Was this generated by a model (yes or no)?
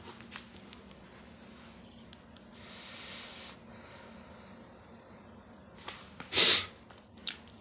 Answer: no